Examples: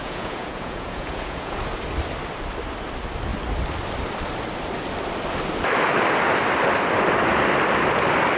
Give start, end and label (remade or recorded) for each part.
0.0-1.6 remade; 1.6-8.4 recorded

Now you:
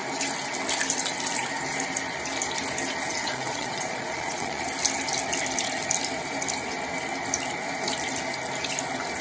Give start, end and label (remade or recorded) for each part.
0.0-3.2 recorded; 3.2-4.6 remade; 4.6-9.2 recorded

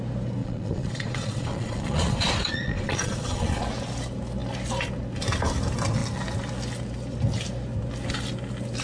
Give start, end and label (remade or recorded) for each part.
0.0-0.4 recorded; 0.4-3.6 remade; 3.6-8.8 recorded

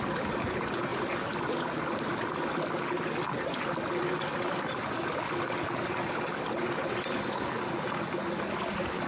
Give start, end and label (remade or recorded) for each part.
0.0-9.1 recorded

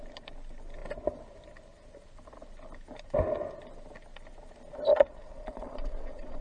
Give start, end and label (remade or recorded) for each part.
0.0-4.9 recorded; 4.9-6.4 remade

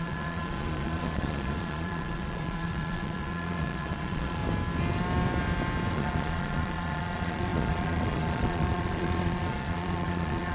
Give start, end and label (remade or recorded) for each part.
0.0-4.4 remade; 4.4-5.9 recorded; 5.9-10.5 remade

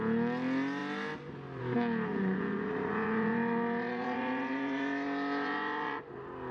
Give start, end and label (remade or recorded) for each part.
0.0-2.1 recorded; 2.1-6.0 remade; 6.0-6.5 recorded

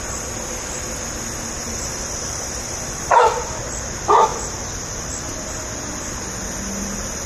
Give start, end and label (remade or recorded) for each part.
0.0-7.3 recorded